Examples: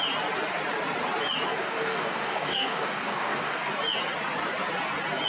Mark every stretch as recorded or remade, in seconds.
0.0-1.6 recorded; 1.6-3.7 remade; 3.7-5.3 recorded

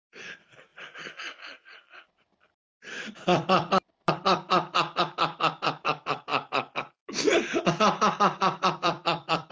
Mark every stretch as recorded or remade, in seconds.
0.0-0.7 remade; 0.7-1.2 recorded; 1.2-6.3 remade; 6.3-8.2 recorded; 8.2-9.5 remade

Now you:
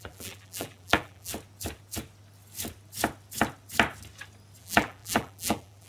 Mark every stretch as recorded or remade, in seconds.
0.0-1.3 remade; 1.3-4.6 recorded; 4.6-5.9 remade

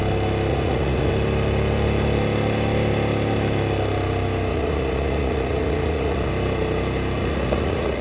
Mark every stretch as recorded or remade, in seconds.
0.0-0.5 recorded; 0.5-1.1 remade; 1.1-4.5 recorded; 4.5-6.3 remade; 6.3-7.2 recorded; 7.2-8.0 remade

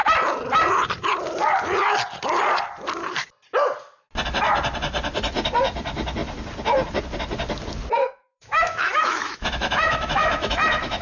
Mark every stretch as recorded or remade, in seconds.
0.0-8.2 recorded; 8.2-11.0 remade